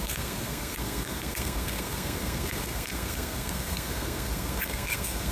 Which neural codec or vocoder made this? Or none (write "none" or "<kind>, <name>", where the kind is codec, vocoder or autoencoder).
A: codec, SNAC